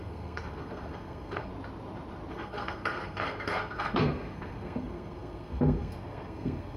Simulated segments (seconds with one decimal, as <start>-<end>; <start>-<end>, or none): 0.0-1.5; 2.3-6.8